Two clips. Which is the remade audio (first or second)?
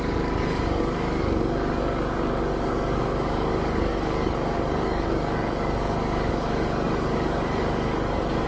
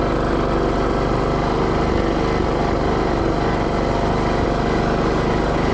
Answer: first